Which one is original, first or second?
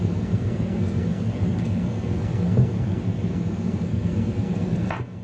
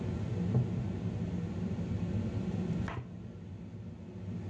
second